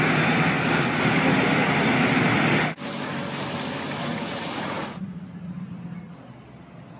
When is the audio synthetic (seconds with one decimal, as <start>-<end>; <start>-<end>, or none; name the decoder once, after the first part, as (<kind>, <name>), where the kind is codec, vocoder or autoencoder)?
4.1-5.2 (vocoder, Vocos)